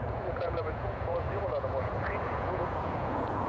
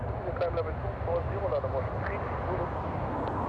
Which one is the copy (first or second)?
first